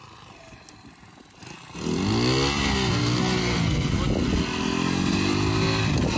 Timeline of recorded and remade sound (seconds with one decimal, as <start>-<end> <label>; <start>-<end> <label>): 0.0-3.4 recorded; 3.4-3.9 remade; 3.9-6.2 recorded